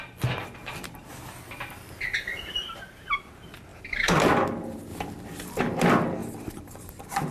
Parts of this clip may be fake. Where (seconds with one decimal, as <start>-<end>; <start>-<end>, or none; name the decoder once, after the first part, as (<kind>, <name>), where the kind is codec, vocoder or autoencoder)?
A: 0.6-1.4 (vocoder, BigVGAN v2); 3.7-4.3; 4.9-5.6; 6.2-7.3